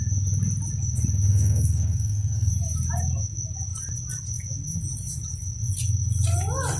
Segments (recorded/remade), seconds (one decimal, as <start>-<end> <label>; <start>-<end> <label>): 0.0-1.3 recorded; 1.3-2.5 remade; 2.5-6.8 recorded